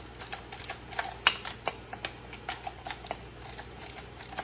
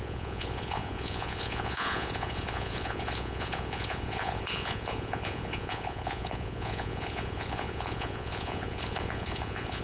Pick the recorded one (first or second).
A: first